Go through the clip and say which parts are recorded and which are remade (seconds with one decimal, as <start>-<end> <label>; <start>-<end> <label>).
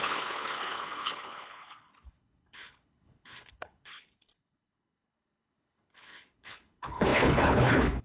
0.0-8.0 remade